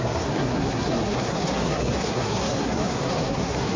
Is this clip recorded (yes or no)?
no